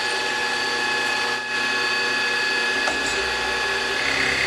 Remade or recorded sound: recorded